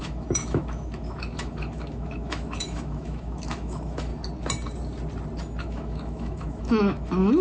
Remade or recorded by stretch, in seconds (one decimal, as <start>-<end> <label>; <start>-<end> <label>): 0.0-4.1 remade; 4.1-5.6 recorded; 5.6-7.4 remade